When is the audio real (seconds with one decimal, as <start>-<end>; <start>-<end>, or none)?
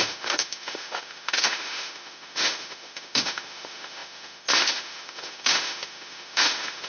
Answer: none